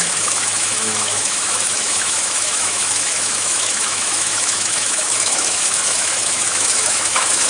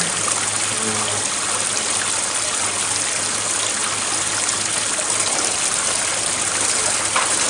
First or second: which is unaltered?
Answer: second